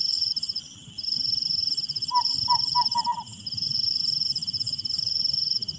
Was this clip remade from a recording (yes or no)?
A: yes